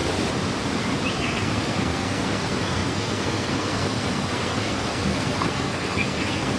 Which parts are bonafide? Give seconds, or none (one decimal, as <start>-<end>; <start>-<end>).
0.0-1.1